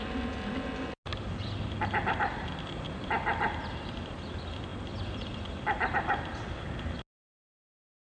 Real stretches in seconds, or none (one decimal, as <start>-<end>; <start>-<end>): 0.0-8.0